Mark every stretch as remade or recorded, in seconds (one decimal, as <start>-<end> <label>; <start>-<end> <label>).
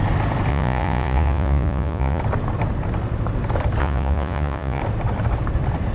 0.0-0.5 recorded; 0.5-2.2 remade; 2.2-3.8 recorded; 3.8-4.8 remade; 4.8-5.9 recorded